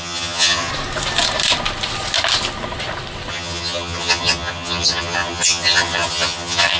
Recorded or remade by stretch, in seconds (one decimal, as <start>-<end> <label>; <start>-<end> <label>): 0.0-0.7 remade; 0.7-3.3 recorded; 3.3-6.8 remade